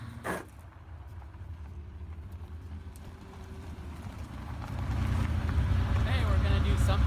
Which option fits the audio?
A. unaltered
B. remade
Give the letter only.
B